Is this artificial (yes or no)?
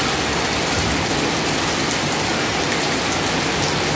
no